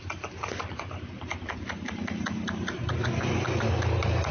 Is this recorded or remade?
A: remade